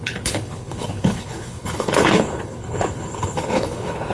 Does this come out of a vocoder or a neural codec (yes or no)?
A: yes